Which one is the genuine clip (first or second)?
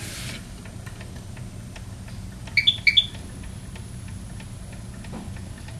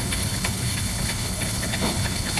first